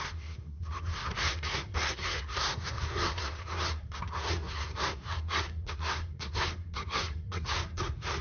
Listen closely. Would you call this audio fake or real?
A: fake